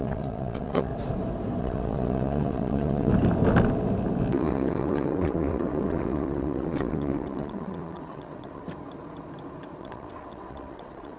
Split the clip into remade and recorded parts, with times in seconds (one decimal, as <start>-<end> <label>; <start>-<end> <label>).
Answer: 0.0-0.9 remade; 0.9-1.6 recorded; 1.6-3.1 remade; 3.1-4.3 recorded; 4.3-8.6 remade; 8.6-9.8 recorded; 9.8-11.2 remade